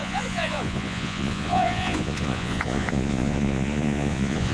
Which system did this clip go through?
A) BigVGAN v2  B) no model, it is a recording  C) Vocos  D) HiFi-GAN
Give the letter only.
C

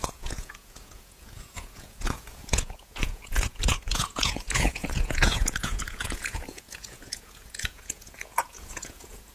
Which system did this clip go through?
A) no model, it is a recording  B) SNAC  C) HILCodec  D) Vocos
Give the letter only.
D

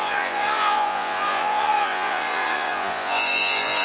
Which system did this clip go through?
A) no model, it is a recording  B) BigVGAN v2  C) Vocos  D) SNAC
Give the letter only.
C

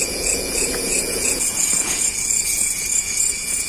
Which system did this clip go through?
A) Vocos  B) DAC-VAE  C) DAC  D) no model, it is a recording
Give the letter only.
A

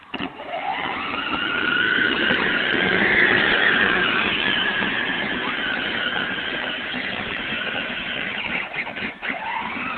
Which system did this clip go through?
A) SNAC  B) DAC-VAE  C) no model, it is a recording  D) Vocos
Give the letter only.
D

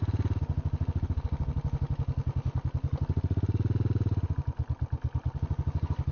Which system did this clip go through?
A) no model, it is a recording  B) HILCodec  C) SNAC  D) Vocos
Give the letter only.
A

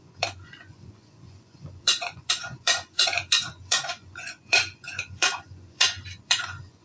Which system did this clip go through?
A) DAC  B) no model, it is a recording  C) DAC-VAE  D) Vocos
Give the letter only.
D